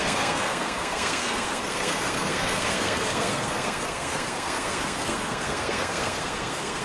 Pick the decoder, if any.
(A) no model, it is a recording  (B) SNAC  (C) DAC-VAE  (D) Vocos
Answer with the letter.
B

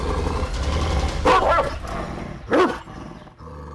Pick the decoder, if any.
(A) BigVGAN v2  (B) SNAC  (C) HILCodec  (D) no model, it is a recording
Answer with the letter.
D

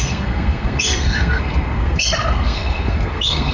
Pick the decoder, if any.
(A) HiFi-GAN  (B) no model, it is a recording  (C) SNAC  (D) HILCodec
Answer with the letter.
C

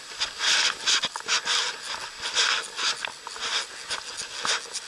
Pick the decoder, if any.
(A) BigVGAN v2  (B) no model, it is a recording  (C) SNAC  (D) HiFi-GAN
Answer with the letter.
B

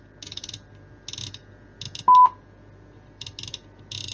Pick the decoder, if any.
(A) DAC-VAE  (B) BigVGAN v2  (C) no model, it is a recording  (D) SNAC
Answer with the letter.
C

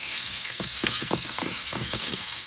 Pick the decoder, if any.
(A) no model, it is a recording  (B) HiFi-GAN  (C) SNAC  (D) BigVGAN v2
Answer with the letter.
C